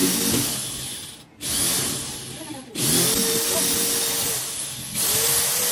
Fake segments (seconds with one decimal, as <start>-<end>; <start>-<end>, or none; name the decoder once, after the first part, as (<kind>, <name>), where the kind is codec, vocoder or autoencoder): none